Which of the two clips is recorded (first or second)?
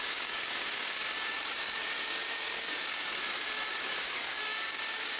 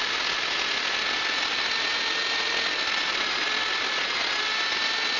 second